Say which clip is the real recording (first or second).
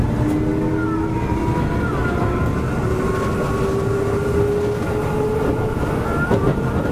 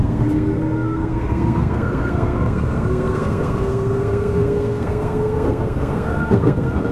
first